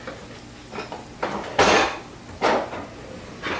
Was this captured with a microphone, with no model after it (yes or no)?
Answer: yes